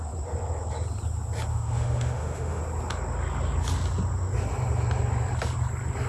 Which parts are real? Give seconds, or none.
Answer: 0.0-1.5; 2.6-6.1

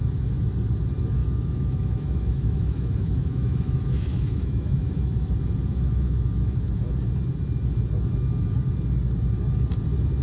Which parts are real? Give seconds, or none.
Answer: 0.0-1.2; 5.3-5.7; 6.9-10.2

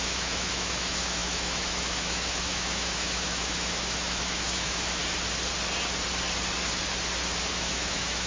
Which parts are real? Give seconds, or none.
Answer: 5.0-7.5

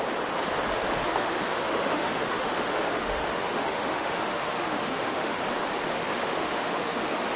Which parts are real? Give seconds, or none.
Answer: 0.0-1.1; 5.4-6.0

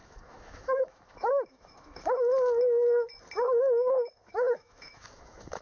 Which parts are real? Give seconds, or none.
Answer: 2.3-3.6